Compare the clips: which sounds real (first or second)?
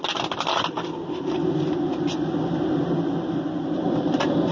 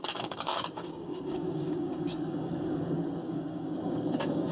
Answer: first